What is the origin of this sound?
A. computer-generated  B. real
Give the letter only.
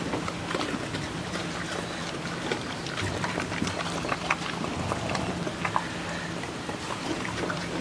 B